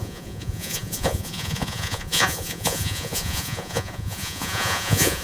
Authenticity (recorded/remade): remade